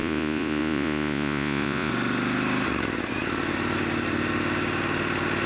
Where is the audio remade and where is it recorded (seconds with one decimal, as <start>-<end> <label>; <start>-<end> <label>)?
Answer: 0.0-1.9 remade; 1.9-5.5 recorded